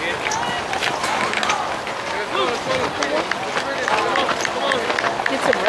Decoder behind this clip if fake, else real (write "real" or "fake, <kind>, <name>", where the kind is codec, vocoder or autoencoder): real